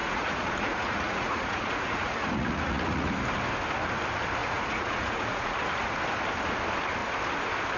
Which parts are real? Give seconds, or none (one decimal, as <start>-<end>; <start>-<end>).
3.1-4.4; 6.0-7.8